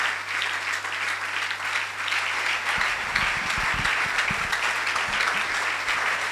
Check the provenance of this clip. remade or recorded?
recorded